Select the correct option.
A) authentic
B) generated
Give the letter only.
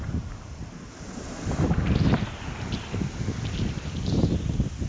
A